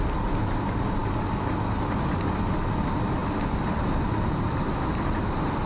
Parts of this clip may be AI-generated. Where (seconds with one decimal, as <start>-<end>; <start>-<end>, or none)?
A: none